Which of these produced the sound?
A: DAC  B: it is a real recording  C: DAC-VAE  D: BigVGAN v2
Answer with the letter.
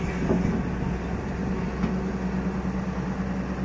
B